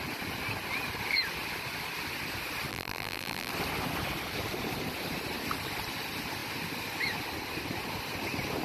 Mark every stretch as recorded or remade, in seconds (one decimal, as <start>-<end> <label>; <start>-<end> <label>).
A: 0.0-2.7 recorded; 2.7-3.5 remade; 3.5-8.6 recorded

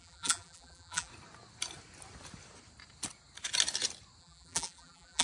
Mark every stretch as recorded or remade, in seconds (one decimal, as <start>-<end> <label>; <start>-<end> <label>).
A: 0.0-1.1 remade; 1.1-4.2 recorded; 4.2-5.2 remade

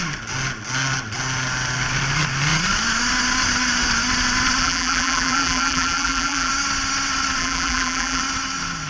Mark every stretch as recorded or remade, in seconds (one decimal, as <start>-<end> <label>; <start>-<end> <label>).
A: 0.0-4.6 recorded; 4.6-6.5 remade; 6.5-7.4 recorded; 7.4-8.2 remade; 8.2-8.9 recorded

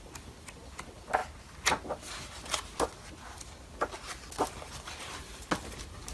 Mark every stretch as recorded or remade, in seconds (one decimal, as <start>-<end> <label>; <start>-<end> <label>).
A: 0.0-6.1 recorded

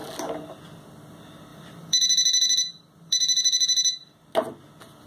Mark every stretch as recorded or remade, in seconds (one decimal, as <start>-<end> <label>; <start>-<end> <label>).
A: 0.0-1.5 recorded; 1.5-4.3 remade; 4.3-5.1 recorded

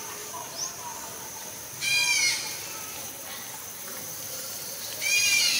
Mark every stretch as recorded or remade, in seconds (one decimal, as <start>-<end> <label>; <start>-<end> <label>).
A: 0.0-0.9 remade; 0.9-4.3 recorded; 4.3-5.6 remade

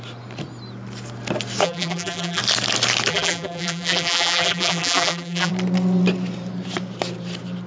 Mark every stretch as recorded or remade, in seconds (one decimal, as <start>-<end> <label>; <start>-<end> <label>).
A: 0.0-1.6 recorded; 1.6-2.4 remade; 2.4-3.1 recorded; 3.1-5.5 remade; 5.5-7.7 recorded

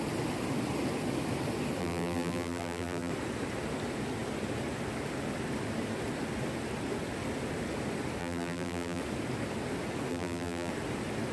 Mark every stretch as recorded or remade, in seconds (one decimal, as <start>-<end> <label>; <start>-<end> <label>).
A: 0.0-1.8 recorded; 1.8-3.1 remade; 3.1-8.2 recorded; 8.2-9.0 remade; 9.0-10.1 recorded; 10.1-10.7 remade; 10.7-11.3 recorded